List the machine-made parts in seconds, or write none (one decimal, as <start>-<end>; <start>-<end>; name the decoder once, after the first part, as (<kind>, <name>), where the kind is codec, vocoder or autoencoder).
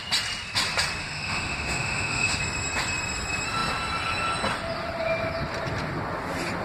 1.0-2.4 (autoencoder, DAC-VAE)